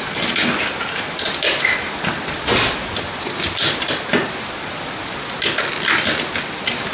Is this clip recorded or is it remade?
recorded